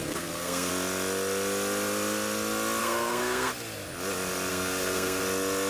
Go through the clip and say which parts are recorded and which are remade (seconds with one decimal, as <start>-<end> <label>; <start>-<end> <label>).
0.0-0.7 remade; 0.7-2.8 recorded; 2.8-3.5 remade; 3.5-4.5 recorded; 4.5-5.2 remade; 5.2-5.7 recorded